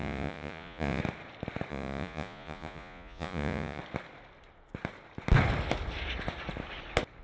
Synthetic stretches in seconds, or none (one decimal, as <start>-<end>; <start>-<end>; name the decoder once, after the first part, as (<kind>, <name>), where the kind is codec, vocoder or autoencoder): 0.0-1.0 (vocoder, Vocos); 1.7-3.8